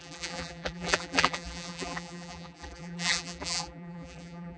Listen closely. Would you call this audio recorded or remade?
remade